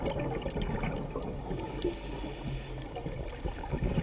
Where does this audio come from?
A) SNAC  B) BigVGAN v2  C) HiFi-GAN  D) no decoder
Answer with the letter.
D